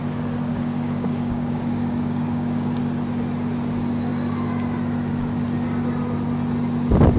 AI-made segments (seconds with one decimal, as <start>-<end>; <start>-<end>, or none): 0.5-2.8